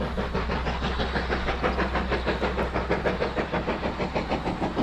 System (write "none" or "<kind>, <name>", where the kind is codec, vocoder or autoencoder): none